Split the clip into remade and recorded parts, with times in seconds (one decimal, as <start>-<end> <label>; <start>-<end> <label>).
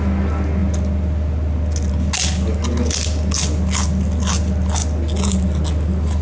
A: 0.0-6.2 recorded